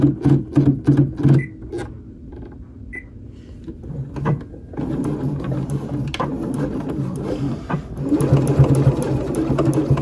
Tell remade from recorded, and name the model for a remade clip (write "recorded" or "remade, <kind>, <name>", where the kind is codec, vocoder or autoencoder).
recorded